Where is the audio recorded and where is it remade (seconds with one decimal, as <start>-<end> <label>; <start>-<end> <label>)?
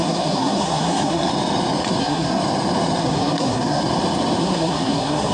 0.0-1.3 remade; 1.3-2.0 recorded; 2.0-2.4 remade; 2.4-3.0 recorded; 3.0-3.8 remade; 3.8-4.4 recorded; 4.4-5.3 remade